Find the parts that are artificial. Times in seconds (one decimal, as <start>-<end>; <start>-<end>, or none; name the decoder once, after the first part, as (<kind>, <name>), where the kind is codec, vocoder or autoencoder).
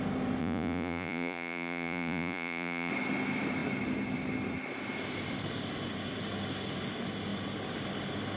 0.4-2.9 (vocoder, Vocos)